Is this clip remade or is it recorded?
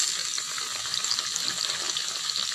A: recorded